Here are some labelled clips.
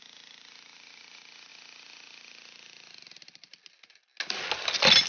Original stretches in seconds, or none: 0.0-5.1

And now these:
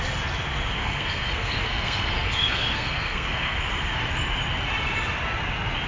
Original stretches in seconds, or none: 0.0-0.8; 3.6-5.9